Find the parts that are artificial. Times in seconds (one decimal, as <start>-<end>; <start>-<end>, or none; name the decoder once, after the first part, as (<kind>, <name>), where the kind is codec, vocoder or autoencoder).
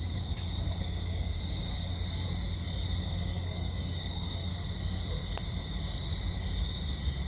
0.0-1.9 (codec, DAC); 3.0-4.5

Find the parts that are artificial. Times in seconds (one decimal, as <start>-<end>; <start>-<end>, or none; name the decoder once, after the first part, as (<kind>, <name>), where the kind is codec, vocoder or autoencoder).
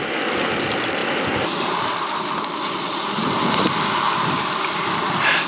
none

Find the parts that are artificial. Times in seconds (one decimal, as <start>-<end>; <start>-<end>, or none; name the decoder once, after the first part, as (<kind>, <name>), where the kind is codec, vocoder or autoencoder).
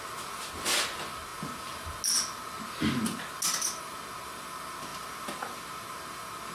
none